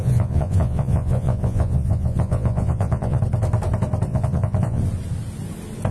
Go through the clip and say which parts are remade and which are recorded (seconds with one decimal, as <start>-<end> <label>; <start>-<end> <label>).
0.0-3.2 remade; 3.2-4.1 recorded; 4.1-4.8 remade; 4.8-5.9 recorded